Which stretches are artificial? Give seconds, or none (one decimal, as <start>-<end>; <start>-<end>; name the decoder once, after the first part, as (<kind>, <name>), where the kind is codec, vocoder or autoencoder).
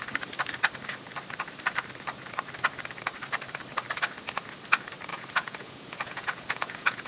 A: 5.1-7.1 (vocoder, Vocos)